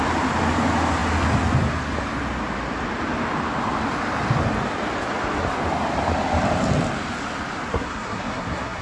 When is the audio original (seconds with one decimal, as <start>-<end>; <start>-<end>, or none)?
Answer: 0.0-7.7